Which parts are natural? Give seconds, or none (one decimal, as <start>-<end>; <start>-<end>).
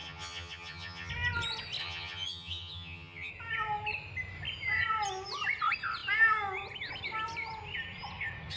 1.1-1.8; 3.3-8.6